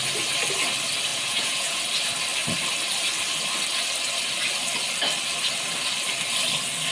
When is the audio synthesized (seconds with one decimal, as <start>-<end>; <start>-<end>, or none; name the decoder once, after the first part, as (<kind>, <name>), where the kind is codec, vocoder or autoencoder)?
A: 1.1-1.8 (vocoder, Vocos)